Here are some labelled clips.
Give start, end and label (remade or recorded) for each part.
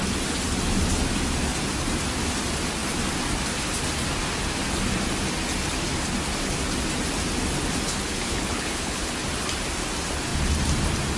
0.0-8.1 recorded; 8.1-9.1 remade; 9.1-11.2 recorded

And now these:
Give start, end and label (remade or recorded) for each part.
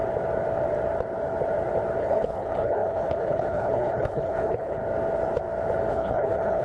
0.0-2.0 recorded; 2.0-4.8 remade; 4.8-5.9 recorded; 5.9-6.6 remade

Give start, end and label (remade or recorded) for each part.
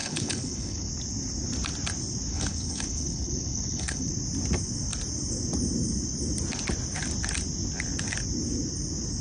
0.0-0.9 remade; 0.9-2.3 recorded; 2.3-4.1 remade; 4.1-9.2 recorded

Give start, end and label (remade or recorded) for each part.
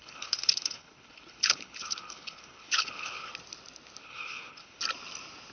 0.0-3.3 remade; 3.3-4.0 recorded; 4.0-4.8 remade; 4.8-5.5 recorded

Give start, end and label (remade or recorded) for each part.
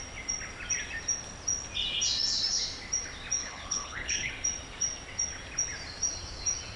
0.0-3.4 recorded; 3.4-4.3 remade; 4.3-6.8 recorded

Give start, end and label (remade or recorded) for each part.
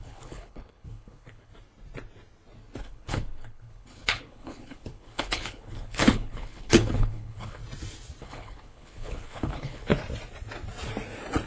0.0-1.5 remade; 1.5-2.8 recorded; 2.8-7.6 remade; 7.6-8.2 recorded; 8.2-9.9 remade; 9.9-11.5 recorded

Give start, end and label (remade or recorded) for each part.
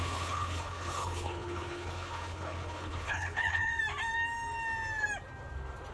0.0-3.7 remade; 3.7-5.9 recorded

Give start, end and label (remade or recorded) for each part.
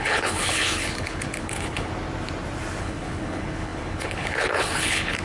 0.0-1.9 remade; 1.9-2.8 recorded; 2.8-5.2 remade